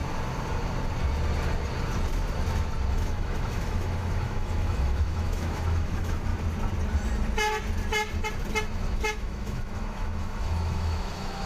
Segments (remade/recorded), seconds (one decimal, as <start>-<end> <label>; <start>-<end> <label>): 0.0-2.9 recorded; 2.9-6.3 remade; 6.3-8.9 recorded; 8.9-11.5 remade